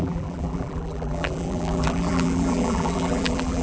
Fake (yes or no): yes